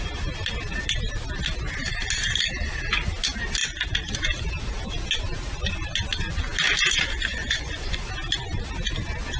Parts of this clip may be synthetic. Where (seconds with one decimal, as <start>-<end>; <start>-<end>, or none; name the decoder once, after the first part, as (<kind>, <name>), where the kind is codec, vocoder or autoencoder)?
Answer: 7.3-8.0 (vocoder, Vocos)